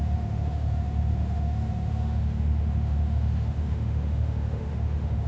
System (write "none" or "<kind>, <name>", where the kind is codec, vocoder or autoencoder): autoencoder, DAC-VAE